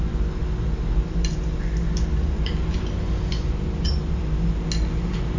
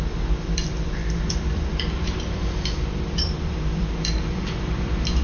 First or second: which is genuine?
first